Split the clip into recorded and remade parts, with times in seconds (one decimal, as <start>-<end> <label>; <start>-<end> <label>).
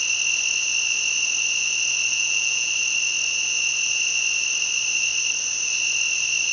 0.0-2.1 recorded; 2.1-2.7 remade; 2.7-6.5 recorded